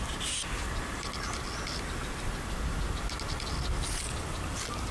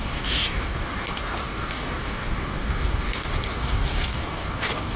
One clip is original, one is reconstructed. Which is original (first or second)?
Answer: first